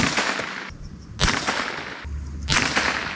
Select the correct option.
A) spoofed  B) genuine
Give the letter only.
B